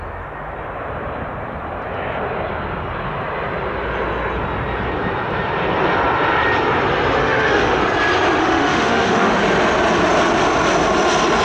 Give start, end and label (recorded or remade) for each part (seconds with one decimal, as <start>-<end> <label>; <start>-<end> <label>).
0.0-7.2 recorded; 7.2-7.8 remade; 7.8-8.4 recorded; 8.4-9.3 remade; 9.3-11.4 recorded